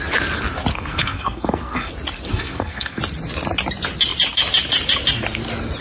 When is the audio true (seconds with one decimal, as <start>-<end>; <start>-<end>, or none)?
0.0-0.7; 1.9-2.3; 3.0-5.8